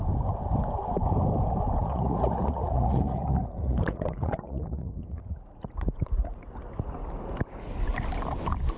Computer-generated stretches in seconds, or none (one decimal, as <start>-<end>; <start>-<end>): 1.8-6.5